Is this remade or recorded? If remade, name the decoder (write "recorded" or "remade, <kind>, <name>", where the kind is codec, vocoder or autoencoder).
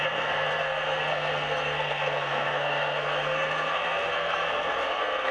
remade, codec, SNAC